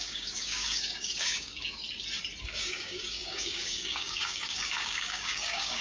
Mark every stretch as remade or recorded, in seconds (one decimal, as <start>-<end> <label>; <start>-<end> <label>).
0.0-1.8 remade; 1.8-2.4 recorded; 2.4-5.8 remade